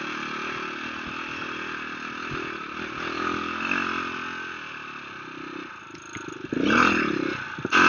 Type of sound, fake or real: real